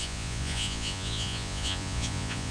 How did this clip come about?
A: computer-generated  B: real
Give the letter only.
A